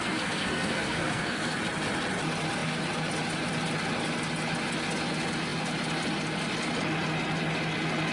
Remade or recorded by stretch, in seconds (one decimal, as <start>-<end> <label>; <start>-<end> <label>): 0.0-1.6 remade; 1.6-8.1 recorded